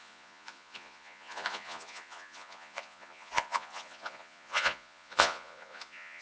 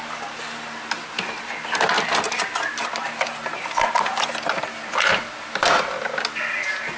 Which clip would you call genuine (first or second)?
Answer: second